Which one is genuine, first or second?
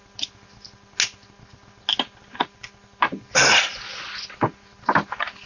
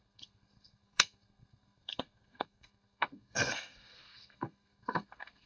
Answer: first